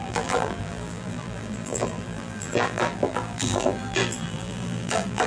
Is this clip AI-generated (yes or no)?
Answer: yes